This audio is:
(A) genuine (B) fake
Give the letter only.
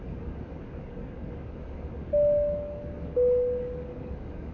B